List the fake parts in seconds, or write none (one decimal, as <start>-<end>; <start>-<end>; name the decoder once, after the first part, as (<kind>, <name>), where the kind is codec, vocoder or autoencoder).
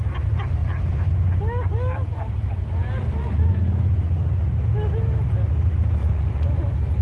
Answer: 3.0-3.5 (vocoder, Vocos); 6.0-6.6